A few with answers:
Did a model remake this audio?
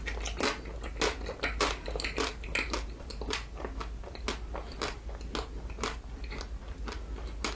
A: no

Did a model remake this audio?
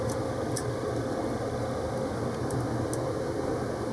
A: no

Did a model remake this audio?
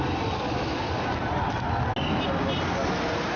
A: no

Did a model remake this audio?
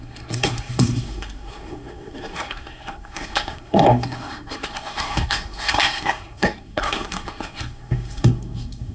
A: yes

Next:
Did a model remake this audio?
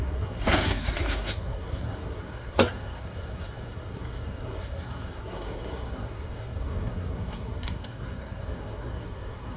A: yes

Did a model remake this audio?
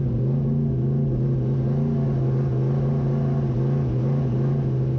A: no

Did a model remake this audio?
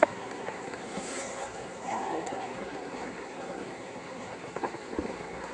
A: yes